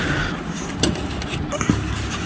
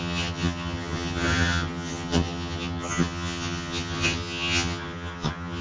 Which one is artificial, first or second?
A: second